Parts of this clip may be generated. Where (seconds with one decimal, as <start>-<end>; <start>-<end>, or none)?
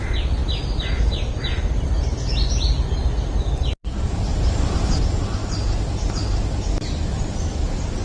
0.4-1.6; 4.3-5.0